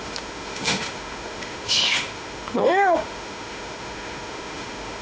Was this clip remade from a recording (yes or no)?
yes